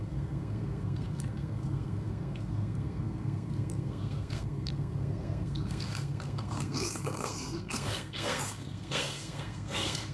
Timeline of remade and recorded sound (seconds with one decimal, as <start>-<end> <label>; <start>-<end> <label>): 0.0-10.1 remade

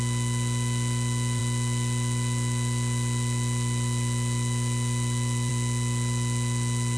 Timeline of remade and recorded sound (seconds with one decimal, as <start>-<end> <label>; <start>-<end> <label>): 0.0-7.0 recorded

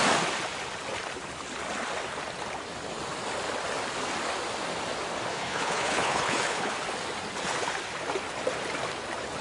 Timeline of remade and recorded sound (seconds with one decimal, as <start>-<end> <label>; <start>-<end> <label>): 0.0-5.3 recorded; 5.3-6.7 remade; 6.7-9.4 recorded

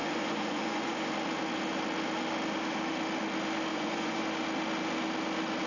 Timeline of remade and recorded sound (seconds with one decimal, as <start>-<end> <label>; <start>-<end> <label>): 0.0-1.1 remade; 1.1-3.7 recorded; 3.7-4.2 remade; 4.2-5.7 recorded